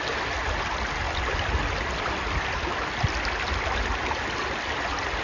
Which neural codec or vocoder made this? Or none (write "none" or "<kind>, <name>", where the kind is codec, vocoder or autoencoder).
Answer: none